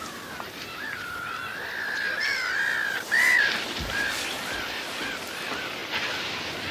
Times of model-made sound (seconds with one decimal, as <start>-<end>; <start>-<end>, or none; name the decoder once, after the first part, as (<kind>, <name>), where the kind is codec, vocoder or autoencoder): 5.8-6.7 (vocoder, BigVGAN v2)